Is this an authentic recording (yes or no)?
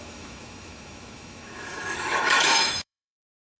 no